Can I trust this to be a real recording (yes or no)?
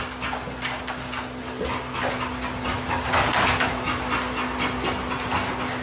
yes